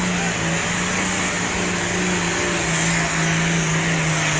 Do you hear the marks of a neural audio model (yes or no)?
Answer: no